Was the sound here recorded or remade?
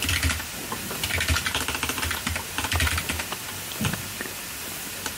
recorded